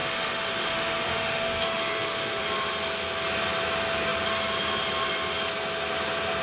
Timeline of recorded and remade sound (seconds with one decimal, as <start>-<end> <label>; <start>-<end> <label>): 0.0-2.4 remade; 2.4-6.4 recorded